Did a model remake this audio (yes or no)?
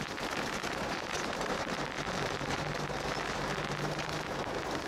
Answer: yes